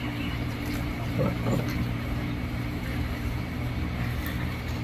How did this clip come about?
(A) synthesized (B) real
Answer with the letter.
A